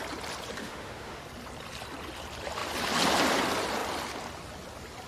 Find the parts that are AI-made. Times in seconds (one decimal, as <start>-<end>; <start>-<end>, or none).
0.6-1.2